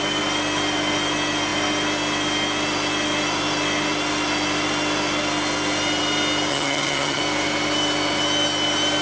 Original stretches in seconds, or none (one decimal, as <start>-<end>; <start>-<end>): 0.0-6.5; 7.2-9.0